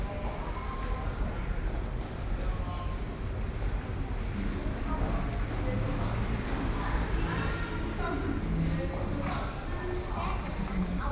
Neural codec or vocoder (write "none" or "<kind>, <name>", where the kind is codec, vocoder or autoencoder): none